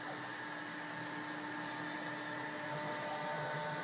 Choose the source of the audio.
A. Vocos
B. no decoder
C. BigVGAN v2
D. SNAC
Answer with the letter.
B